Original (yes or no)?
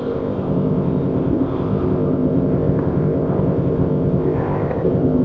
no